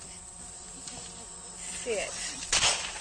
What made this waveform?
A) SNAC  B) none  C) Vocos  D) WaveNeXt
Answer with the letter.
B